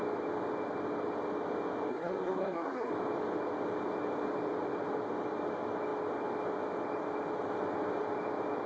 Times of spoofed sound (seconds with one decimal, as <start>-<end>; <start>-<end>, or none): 1.9-2.9